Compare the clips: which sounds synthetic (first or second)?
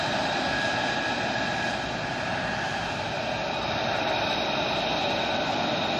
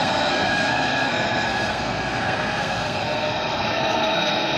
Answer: second